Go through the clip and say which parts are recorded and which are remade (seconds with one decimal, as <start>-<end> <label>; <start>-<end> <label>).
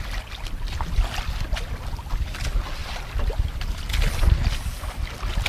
0.0-2.8 recorded; 2.8-3.8 remade; 3.8-5.5 recorded